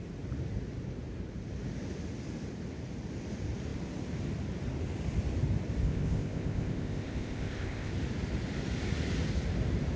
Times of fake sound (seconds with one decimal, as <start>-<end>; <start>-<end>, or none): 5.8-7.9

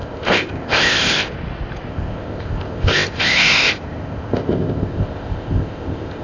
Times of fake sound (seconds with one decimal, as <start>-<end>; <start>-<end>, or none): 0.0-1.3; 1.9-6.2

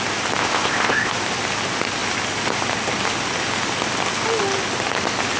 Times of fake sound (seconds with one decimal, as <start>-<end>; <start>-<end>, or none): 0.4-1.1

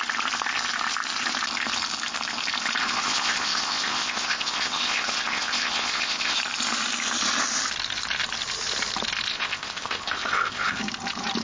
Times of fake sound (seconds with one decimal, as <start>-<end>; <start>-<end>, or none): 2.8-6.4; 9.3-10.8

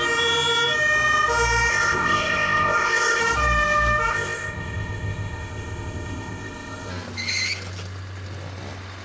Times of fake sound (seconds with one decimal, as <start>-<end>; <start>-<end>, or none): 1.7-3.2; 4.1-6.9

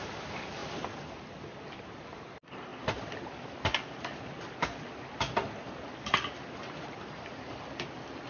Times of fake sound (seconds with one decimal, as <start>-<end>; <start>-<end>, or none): none

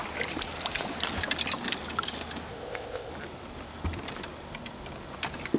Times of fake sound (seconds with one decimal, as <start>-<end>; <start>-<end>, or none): 2.5-3.1